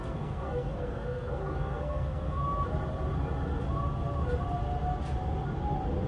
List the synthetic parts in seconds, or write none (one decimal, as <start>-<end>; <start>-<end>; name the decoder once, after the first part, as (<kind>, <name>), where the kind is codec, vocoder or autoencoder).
0.0-2.4 (codec, SNAC)